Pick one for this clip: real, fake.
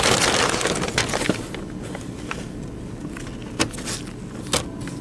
real